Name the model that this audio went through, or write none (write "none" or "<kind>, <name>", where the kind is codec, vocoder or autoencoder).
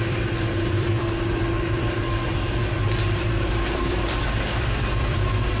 vocoder, BigVGAN v2